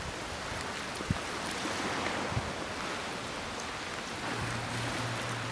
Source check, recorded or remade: recorded